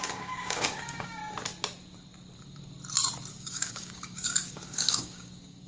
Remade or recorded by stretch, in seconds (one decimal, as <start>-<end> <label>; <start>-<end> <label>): 0.0-1.2 remade; 1.2-3.3 recorded; 3.3-5.7 remade